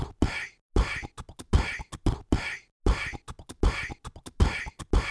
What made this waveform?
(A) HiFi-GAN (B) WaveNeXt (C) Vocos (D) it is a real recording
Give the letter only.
D